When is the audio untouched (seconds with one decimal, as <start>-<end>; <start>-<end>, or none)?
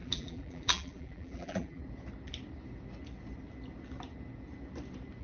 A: 1.8-5.2